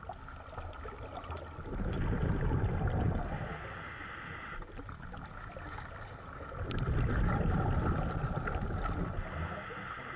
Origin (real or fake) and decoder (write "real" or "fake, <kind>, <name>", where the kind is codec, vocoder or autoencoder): real